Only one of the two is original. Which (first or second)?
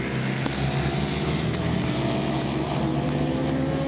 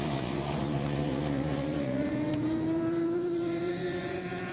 first